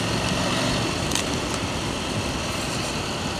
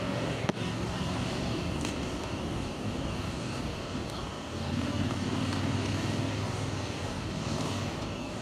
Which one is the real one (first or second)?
first